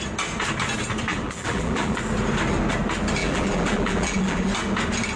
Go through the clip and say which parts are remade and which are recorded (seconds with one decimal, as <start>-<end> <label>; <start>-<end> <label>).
0.0-1.1 recorded; 1.1-2.0 remade; 2.0-3.2 recorded; 3.2-4.5 remade; 4.5-5.2 recorded